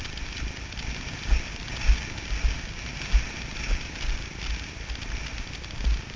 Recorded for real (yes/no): yes